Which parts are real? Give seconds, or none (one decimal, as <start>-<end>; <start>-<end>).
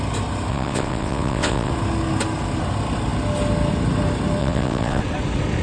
0.0-0.5; 1.7-4.4; 5.0-5.6